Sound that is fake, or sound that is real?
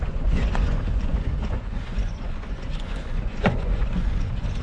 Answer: fake